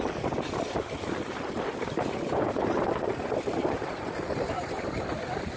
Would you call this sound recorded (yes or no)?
no